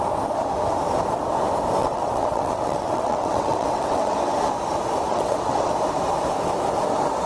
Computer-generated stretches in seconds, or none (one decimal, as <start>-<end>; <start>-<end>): 1.8-4.3; 5.1-5.7